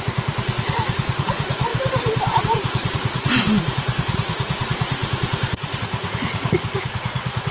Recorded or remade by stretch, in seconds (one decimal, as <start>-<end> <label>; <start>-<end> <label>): 0.0-1.7 remade; 1.7-2.4 recorded; 2.4-7.5 remade